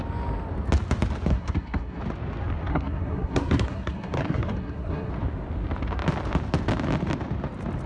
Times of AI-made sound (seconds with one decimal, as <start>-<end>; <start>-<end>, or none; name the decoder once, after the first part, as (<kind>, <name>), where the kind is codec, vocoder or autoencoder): 1.3-2.0 (codec, SNAC); 2.7-5.1